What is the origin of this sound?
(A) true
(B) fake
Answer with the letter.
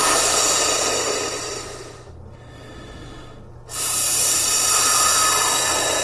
A